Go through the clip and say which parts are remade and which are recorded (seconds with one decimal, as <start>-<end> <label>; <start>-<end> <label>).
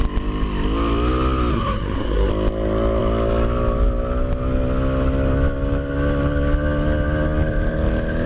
0.0-1.5 recorded; 1.5-2.3 remade; 2.3-8.3 recorded